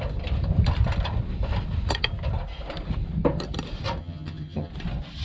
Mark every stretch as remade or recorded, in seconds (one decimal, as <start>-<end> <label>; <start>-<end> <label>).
0.0-4.0 recorded; 4.0-4.7 remade; 4.7-5.2 recorded